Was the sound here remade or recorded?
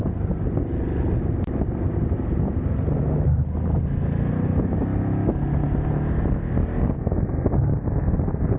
recorded